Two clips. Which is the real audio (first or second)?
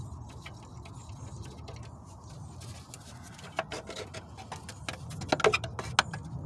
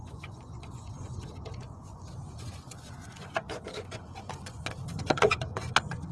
first